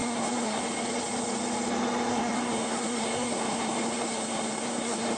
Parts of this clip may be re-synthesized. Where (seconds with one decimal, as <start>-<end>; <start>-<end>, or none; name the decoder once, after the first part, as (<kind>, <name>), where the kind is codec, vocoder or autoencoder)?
0.0-0.6 (codec, SNAC); 2.1-5.2